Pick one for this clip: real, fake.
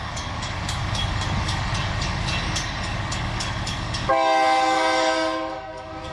fake